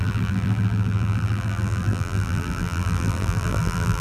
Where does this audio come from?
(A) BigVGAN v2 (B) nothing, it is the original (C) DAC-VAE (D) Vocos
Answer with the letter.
A